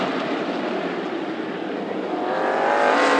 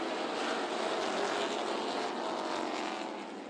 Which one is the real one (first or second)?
second